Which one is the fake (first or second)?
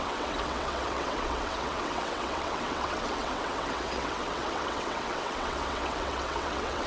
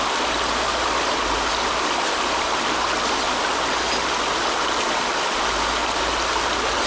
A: first